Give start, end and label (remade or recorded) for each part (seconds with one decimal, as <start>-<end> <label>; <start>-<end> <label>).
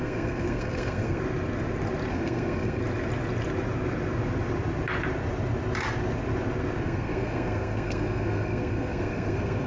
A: 0.0-1.2 remade; 1.2-2.1 recorded; 2.1-2.8 remade; 2.8-6.8 recorded; 6.8-9.7 remade